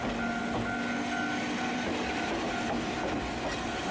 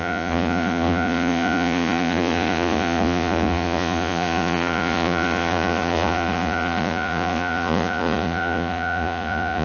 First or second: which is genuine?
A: first